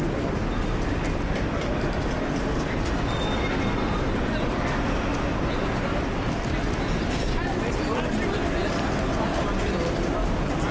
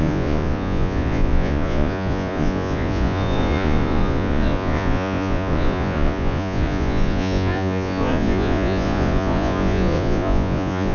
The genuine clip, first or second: first